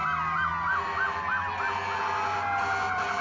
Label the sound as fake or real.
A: real